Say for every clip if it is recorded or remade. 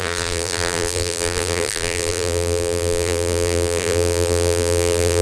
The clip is remade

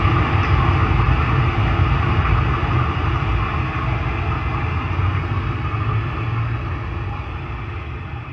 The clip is recorded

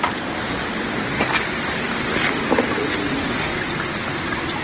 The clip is recorded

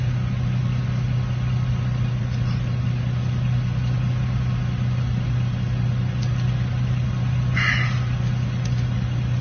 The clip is recorded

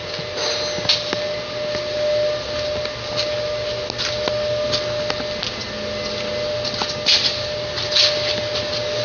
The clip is recorded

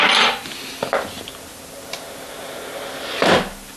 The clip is recorded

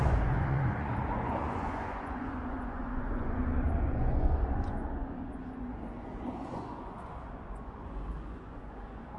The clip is remade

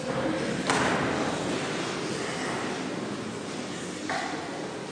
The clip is recorded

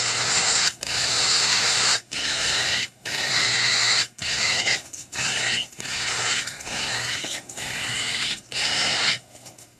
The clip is remade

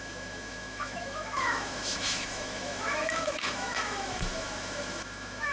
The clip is remade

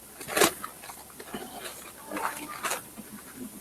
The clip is recorded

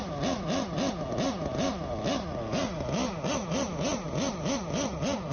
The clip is recorded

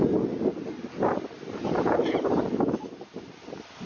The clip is recorded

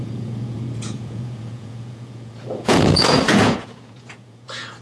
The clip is remade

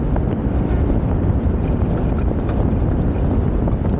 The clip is recorded